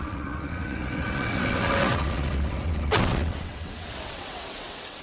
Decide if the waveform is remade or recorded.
remade